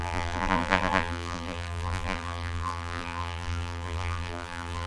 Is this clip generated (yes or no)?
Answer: yes